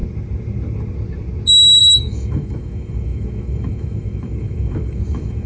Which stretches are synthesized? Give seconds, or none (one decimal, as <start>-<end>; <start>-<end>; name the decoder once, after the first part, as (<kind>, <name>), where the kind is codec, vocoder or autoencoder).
1.8-5.5 (autoencoder, DAC-VAE)